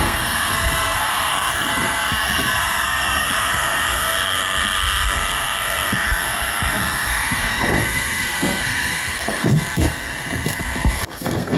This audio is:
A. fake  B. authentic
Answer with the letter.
A